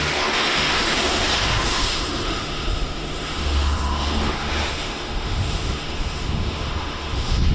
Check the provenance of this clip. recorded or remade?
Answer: remade